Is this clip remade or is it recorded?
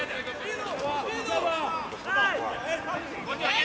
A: recorded